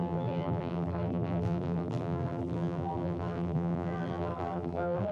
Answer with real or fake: fake